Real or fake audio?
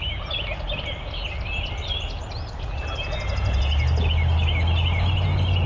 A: real